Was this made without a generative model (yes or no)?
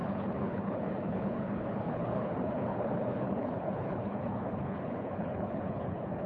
no